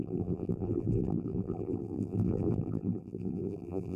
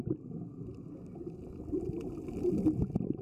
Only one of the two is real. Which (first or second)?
second